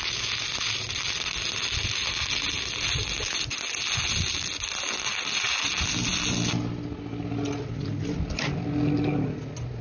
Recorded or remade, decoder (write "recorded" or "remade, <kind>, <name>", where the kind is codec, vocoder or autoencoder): recorded